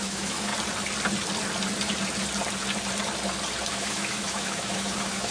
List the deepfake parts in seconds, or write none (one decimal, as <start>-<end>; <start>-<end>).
0.0-0.5; 3.7-5.3